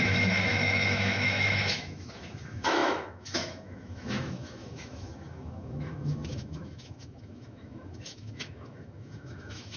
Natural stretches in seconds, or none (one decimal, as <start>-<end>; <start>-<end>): none